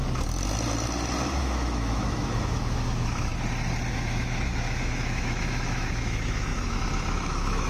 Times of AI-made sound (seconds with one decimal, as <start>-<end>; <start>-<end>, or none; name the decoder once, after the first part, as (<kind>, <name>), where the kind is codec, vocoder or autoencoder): 1.4-3.3 (autoencoder, DAC-VAE); 3.9-7.7